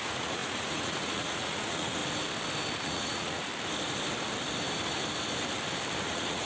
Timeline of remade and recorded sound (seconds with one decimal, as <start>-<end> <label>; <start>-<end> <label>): 0.0-2.0 remade; 2.0-2.8 recorded; 2.8-3.5 remade; 3.5-6.0 recorded; 6.0-6.5 remade

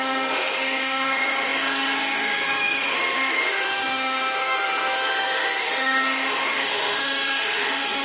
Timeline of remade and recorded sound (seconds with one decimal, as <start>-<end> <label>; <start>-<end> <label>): 0.0-8.0 remade